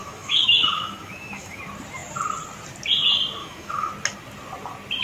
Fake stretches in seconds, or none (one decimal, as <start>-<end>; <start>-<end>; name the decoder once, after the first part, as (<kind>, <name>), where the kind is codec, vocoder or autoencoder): 0.0-1.6 (autoencoder, DAC-VAE); 3.4-3.9